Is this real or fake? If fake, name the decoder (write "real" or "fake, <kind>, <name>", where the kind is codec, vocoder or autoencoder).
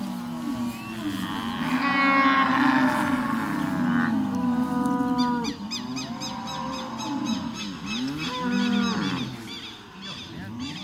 real